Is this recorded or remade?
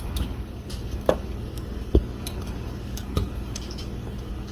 remade